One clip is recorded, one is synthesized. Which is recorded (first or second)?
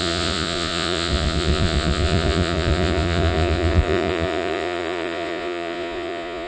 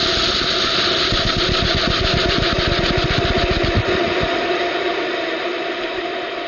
second